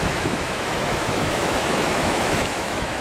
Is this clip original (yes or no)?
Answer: no